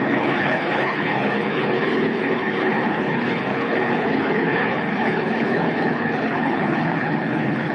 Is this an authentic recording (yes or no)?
no